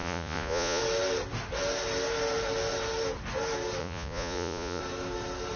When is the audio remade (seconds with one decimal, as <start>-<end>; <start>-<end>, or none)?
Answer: 0.0-0.8; 3.8-4.8